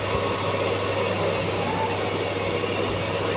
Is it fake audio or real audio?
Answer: real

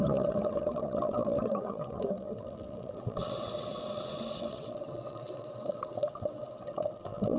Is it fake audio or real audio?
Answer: fake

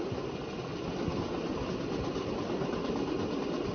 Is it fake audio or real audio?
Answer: real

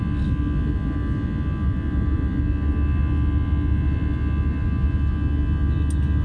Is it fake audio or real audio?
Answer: real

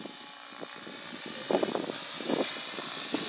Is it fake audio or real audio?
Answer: real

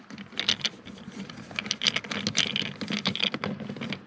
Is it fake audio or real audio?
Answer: real